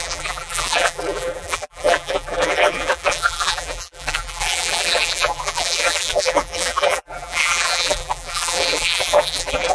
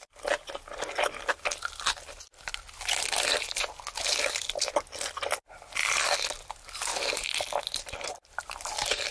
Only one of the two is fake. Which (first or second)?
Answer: first